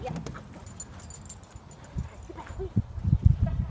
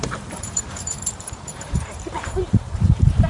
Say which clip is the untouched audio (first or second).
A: first